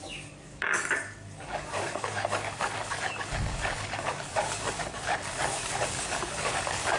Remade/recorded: remade